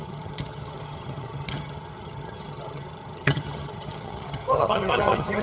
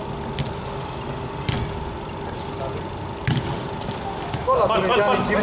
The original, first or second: second